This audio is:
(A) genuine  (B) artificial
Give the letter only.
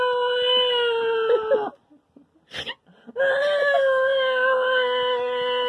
A